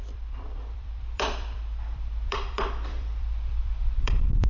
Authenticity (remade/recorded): remade